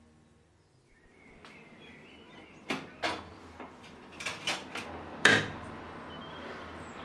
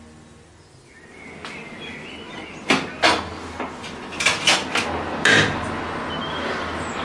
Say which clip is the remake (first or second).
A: first